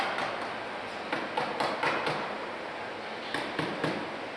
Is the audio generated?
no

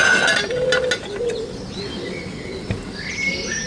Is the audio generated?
no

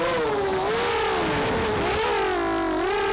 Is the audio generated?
no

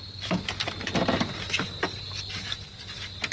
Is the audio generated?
no